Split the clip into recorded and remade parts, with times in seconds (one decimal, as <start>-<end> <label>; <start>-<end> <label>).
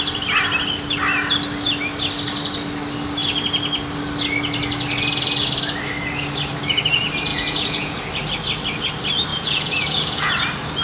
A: 0.0-7.3 recorded; 7.3-8.1 remade; 8.1-9.3 recorded; 9.3-10.3 remade; 10.3-10.8 recorded